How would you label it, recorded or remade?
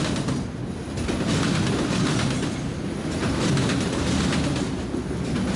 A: recorded